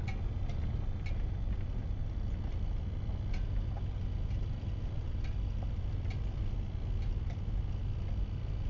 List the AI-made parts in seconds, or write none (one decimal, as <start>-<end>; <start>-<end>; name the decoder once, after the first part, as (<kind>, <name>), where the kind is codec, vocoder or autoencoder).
none